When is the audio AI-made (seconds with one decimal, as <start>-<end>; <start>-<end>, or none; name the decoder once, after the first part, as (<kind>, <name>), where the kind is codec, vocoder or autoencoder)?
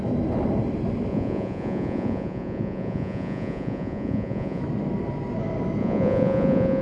1.1-4.6 (vocoder, Vocos); 5.8-6.8